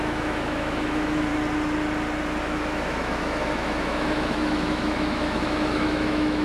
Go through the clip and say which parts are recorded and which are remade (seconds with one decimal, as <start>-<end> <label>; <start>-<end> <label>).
0.0-1.3 remade; 1.3-2.4 recorded; 2.4-6.4 remade